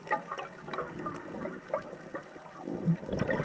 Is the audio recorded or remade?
recorded